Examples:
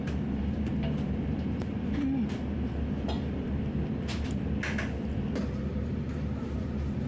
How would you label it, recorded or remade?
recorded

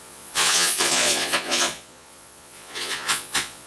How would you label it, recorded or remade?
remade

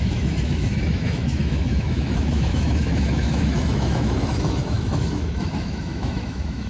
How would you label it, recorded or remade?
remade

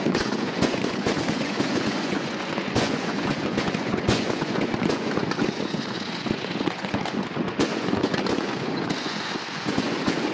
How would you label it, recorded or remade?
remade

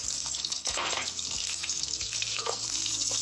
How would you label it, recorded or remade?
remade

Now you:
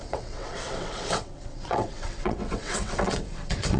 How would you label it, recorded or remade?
remade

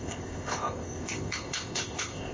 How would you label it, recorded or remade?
remade